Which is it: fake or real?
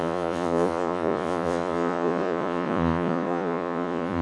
fake